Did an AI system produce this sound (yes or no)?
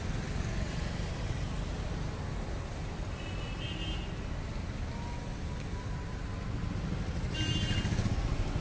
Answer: no